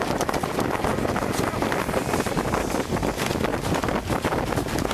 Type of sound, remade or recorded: recorded